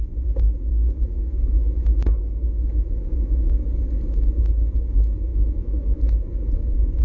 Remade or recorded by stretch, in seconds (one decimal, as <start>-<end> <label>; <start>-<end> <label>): 0.0-0.7 recorded; 0.7-3.5 remade; 3.5-5.3 recorded; 5.3-6.0 remade; 6.0-7.0 recorded